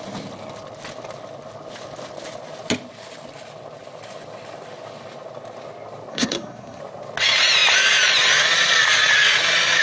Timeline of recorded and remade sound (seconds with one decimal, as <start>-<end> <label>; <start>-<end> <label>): 0.0-6.1 recorded; 6.1-6.8 remade; 6.8-9.8 recorded